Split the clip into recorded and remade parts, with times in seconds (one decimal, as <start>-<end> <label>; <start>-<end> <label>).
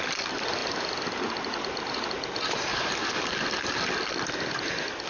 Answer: 0.0-5.1 recorded